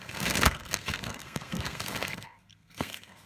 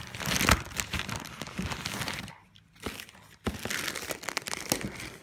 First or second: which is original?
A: second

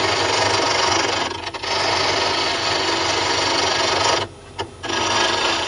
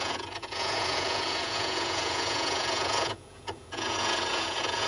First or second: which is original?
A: first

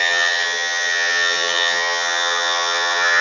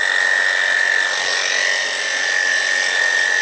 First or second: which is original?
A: second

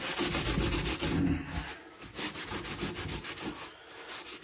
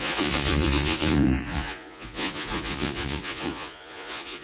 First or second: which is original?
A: first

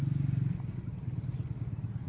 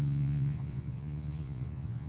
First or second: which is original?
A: first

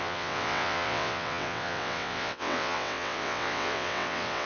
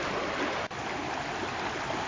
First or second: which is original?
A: second